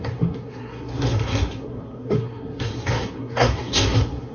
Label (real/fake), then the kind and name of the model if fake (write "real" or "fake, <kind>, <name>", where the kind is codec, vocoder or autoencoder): fake, codec, SNAC